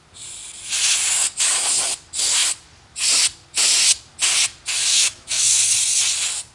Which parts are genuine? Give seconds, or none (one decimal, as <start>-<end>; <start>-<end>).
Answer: 0.0-4.9; 5.6-6.5